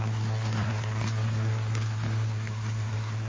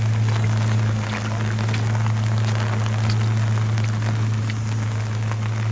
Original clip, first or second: second